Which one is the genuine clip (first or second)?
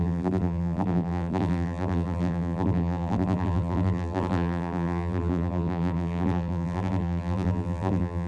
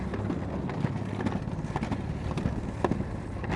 second